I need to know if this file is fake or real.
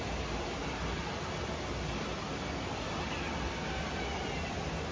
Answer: real